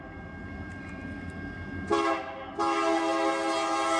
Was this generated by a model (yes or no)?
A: no